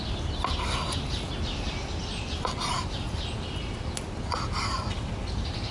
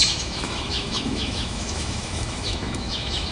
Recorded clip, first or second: first